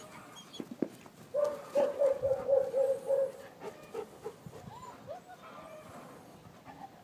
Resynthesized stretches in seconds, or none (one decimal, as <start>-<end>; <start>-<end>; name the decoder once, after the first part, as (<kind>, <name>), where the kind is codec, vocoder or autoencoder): none